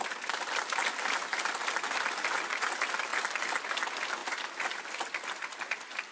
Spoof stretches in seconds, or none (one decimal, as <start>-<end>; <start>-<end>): none